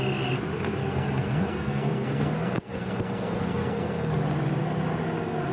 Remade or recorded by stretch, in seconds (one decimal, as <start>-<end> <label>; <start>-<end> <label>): 0.0-0.8 recorded; 0.8-4.1 remade; 4.1-5.5 recorded

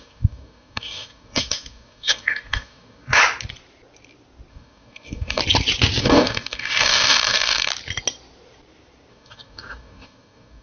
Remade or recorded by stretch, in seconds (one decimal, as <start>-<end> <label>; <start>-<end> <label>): 0.0-3.2 remade; 3.2-4.5 recorded; 4.5-5.4 remade; 5.4-6.0 recorded; 6.0-7.7 remade; 7.7-9.1 recorded; 9.1-10.6 remade

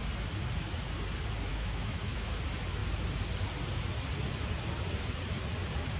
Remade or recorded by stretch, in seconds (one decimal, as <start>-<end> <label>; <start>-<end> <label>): 0.0-1.5 recorded; 1.5-2.4 remade; 2.4-6.0 recorded

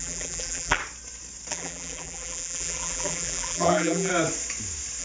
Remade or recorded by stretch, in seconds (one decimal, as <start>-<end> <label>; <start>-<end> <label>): 0.0-0.8 remade; 0.8-1.5 recorded; 1.5-4.1 remade; 4.1-5.0 recorded

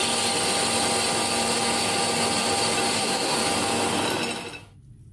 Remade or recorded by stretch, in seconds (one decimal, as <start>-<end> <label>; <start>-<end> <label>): 0.0-2.9 recorded; 2.9-3.4 remade; 3.4-5.1 recorded

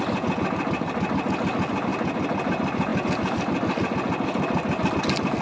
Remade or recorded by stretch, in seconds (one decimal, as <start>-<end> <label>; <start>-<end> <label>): 0.0-5.4 recorded

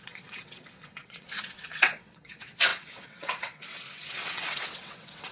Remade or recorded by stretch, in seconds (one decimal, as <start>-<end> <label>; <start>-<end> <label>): 0.0-5.3 remade